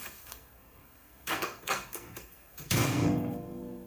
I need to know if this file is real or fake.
fake